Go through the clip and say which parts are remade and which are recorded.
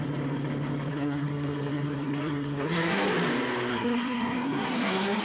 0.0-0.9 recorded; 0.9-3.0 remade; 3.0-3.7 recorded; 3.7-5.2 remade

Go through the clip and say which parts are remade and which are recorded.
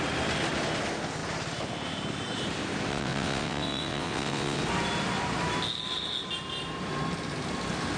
0.0-2.9 recorded; 2.9-4.6 remade; 4.6-8.0 recorded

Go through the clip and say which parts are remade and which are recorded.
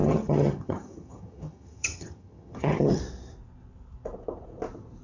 0.0-3.0 remade; 3.0-5.0 recorded